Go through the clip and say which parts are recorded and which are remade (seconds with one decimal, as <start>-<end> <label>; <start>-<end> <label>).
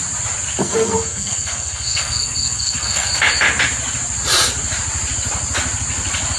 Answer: 0.0-0.6 recorded; 0.6-3.1 remade; 3.1-6.4 recorded